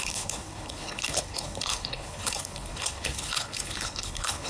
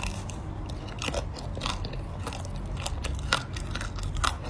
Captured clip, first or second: second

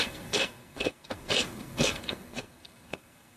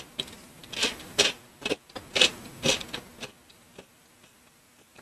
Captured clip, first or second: second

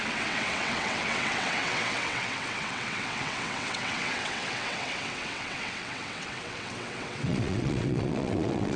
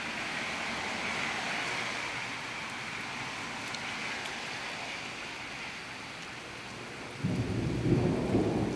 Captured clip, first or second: second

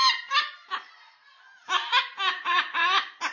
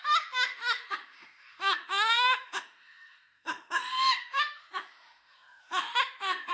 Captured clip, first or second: first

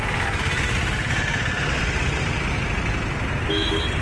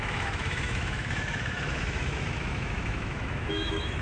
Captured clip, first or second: first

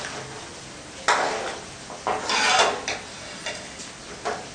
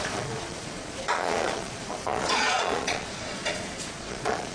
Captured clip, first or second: first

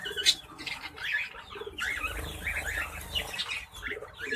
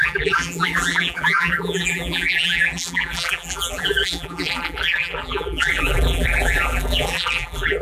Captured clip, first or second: first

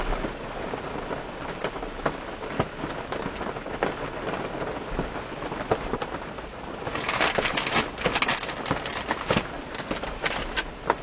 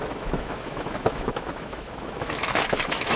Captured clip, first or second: first